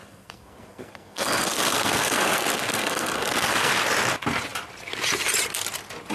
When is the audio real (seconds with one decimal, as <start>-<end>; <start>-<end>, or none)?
3.7-6.1